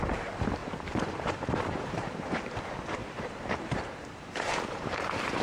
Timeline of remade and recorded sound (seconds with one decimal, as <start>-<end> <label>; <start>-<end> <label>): 0.0-0.6 recorded; 0.6-2.6 remade; 2.6-3.0 recorded; 3.0-5.4 remade